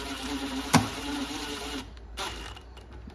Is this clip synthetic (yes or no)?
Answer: yes